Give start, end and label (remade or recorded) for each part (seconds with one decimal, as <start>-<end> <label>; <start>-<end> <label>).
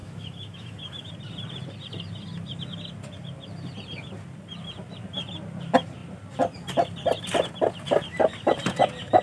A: 0.0-1.1 remade; 1.1-9.2 recorded